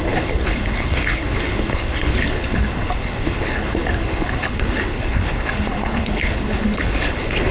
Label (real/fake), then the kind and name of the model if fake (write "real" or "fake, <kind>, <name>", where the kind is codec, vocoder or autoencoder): fake, codec, HILCodec